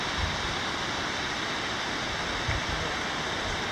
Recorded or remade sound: recorded